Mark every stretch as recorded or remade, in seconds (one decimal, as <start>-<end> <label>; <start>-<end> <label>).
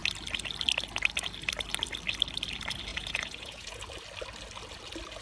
0.0-2.9 recorded; 2.9-3.8 remade; 3.8-5.2 recorded